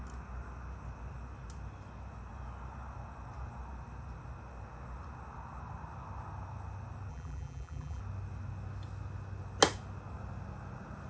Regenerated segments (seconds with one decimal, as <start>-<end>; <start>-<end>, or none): 7.1-8.0